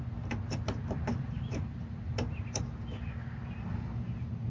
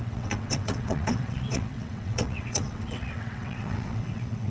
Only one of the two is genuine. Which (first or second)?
first